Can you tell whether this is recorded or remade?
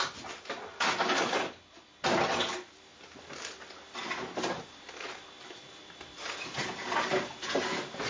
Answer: recorded